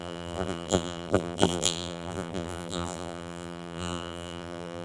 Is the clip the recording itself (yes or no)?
no